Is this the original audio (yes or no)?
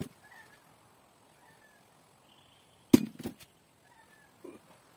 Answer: yes